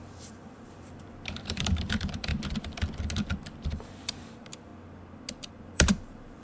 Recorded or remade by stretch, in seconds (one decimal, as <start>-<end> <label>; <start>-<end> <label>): 0.0-2.3 remade; 2.3-3.7 recorded; 3.7-4.7 remade; 4.7-5.5 recorded; 5.5-6.4 remade

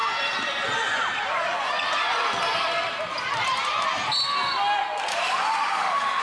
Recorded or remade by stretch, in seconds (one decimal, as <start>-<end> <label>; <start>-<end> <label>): 0.0-5.1 recorded; 5.1-6.2 remade

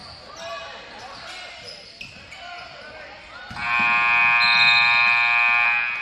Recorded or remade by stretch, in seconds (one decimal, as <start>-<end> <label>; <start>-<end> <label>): 0.0-6.0 recorded